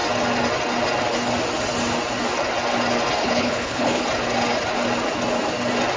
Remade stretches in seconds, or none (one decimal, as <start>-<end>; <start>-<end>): 3.2-4.0

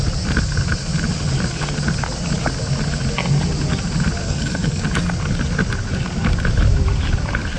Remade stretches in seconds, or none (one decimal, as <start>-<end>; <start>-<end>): 4.2-4.8

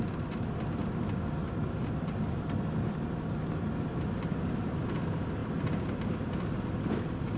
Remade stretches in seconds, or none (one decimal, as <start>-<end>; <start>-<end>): 0.8-4.8; 5.4-6.8

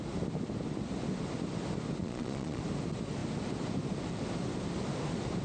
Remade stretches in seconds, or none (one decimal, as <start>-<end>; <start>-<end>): 2.0-2.6